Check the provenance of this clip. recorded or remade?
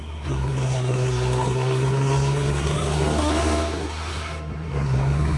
remade